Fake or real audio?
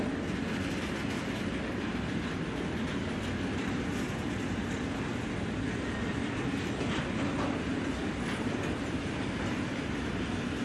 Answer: real